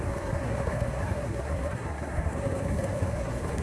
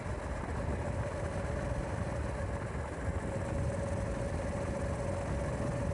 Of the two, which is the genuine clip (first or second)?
second